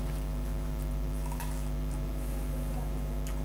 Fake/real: fake